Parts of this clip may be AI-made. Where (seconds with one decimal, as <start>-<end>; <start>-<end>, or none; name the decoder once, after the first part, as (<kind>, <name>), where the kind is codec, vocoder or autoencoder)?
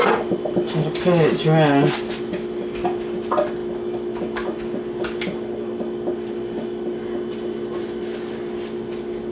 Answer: none